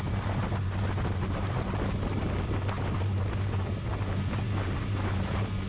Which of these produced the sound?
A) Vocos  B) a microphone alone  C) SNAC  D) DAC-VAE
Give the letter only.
B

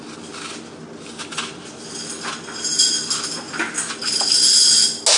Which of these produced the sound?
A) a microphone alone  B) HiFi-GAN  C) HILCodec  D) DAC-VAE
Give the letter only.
A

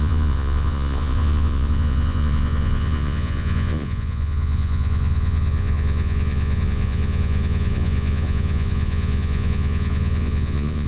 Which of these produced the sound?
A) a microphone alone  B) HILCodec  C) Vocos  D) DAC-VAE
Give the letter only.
C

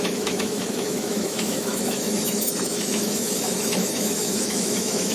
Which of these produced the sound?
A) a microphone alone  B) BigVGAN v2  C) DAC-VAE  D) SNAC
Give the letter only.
C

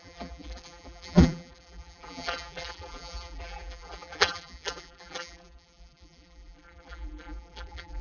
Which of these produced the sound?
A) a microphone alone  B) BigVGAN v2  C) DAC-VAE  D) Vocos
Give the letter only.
B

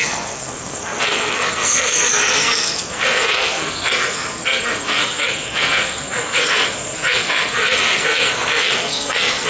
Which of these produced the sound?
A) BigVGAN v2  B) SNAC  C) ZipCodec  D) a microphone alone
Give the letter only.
B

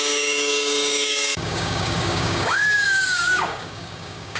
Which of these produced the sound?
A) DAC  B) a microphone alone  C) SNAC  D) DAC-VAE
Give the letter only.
A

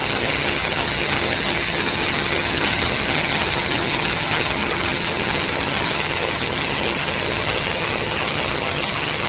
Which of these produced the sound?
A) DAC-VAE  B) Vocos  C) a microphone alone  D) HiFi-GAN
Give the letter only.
D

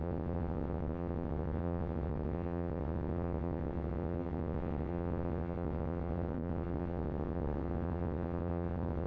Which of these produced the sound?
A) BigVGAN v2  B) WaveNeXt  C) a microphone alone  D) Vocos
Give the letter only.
B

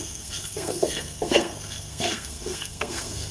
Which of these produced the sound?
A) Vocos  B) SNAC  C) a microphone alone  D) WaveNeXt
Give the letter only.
B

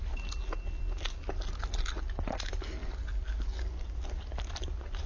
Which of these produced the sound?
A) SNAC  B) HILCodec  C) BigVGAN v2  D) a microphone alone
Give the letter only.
D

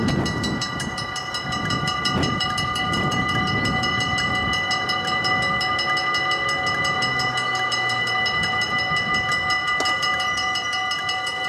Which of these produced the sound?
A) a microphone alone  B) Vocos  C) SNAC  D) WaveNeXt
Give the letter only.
A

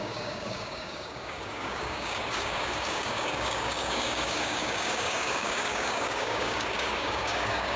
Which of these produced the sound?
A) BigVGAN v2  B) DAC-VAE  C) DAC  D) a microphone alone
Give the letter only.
C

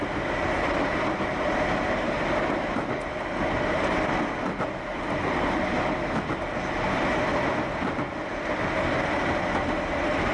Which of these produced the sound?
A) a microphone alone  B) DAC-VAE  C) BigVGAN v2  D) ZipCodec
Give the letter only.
A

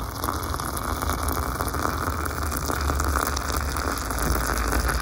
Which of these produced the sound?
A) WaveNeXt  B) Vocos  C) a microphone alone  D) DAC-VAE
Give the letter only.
C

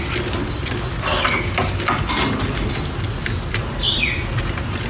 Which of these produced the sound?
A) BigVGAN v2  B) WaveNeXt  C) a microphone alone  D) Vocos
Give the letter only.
C